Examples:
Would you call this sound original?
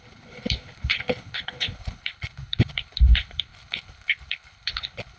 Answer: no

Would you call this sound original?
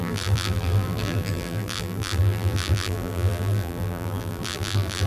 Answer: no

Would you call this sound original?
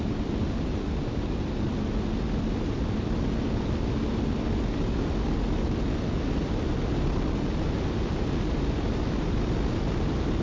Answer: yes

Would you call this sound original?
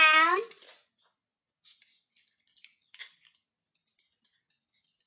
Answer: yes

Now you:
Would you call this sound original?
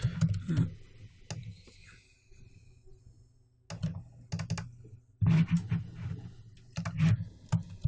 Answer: yes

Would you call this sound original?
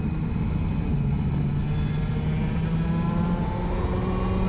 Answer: yes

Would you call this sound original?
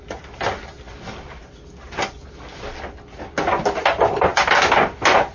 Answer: yes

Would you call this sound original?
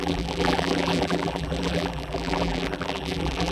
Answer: no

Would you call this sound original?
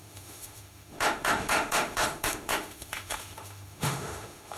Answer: no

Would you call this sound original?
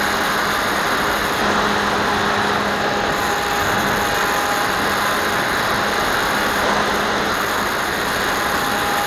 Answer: yes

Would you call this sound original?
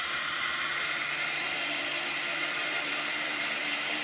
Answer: no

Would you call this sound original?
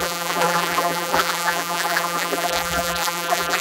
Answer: no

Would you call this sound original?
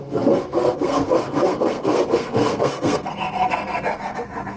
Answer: no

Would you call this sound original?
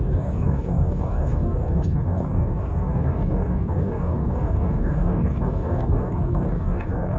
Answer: no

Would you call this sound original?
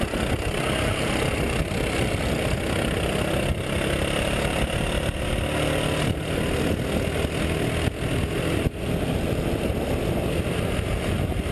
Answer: yes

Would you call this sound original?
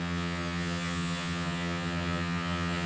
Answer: no